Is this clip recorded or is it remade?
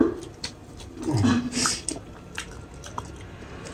recorded